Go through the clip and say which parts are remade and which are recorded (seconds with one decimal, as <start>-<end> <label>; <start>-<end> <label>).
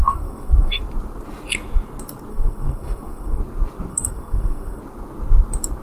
0.0-0.8 remade; 0.8-2.3 recorded; 2.3-3.4 remade; 3.4-3.9 recorded; 3.9-4.8 remade; 4.8-5.8 recorded